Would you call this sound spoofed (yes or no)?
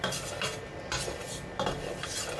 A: no